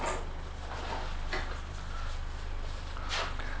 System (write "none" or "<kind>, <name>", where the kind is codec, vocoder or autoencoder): none